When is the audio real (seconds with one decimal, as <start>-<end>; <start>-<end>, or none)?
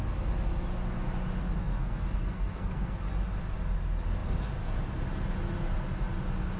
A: 0.0-1.6; 3.0-6.6